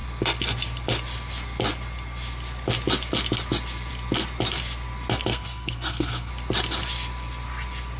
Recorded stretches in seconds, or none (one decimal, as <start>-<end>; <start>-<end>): 0.0-5.3; 6.3-8.0